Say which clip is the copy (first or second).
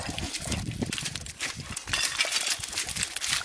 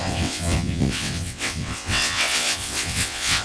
second